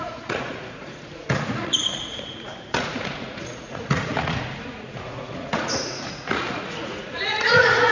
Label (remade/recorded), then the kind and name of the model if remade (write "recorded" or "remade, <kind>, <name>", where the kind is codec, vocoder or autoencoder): remade, vocoder, Vocos